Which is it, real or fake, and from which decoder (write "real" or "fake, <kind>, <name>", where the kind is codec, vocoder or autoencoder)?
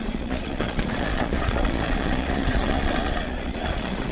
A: fake, vocoder, Vocos